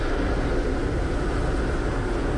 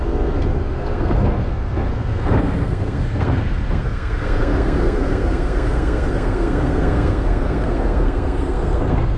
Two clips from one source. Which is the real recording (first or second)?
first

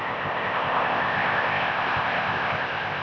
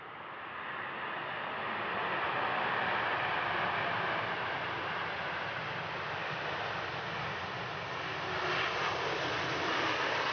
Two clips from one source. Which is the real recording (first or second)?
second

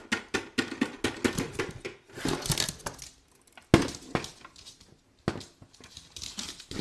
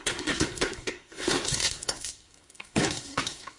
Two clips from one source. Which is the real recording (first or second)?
first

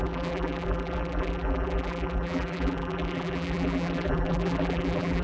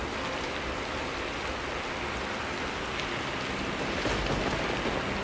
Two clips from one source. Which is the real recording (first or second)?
second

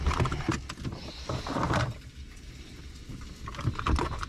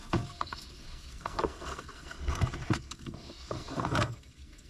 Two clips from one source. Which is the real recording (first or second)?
first